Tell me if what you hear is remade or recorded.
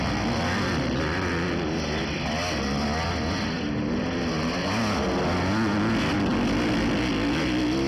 recorded